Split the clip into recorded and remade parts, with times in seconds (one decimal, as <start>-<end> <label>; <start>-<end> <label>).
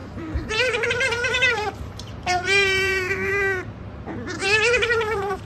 0.0-3.3 remade; 3.3-4.4 recorded; 4.4-5.5 remade